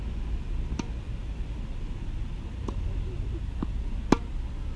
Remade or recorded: recorded